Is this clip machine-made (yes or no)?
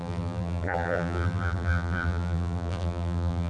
yes